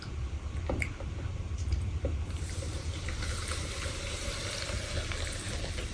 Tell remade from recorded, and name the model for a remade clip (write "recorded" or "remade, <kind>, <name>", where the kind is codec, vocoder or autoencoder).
recorded